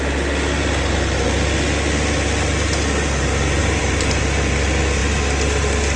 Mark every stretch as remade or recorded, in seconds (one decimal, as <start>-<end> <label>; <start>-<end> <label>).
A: 0.0-3.6 recorded; 3.6-4.2 remade; 4.2-6.0 recorded